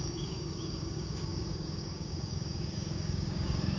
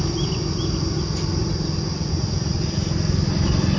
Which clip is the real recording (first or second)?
second